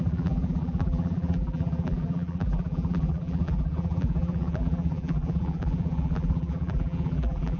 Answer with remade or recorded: remade